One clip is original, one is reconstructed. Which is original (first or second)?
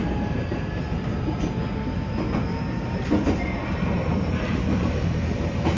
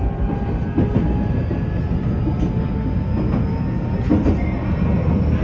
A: second